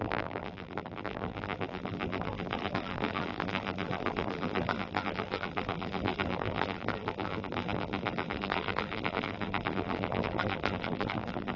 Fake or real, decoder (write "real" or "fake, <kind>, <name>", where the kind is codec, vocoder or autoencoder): fake, vocoder, BigVGAN v2